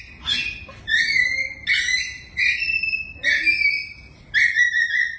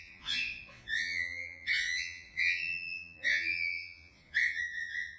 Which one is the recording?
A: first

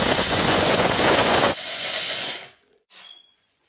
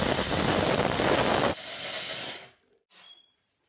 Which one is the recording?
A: second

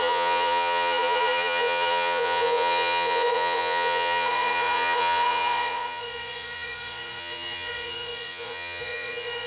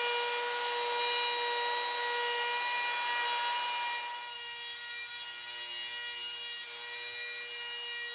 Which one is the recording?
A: second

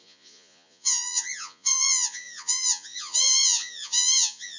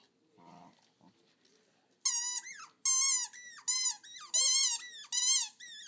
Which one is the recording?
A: second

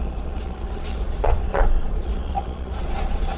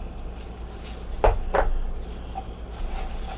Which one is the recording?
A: second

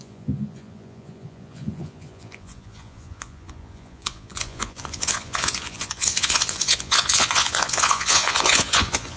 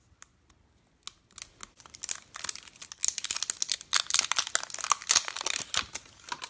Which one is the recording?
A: second